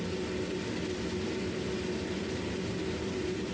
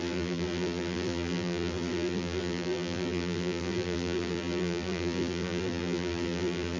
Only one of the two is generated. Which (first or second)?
second